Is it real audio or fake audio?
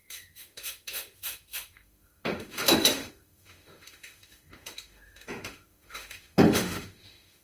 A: fake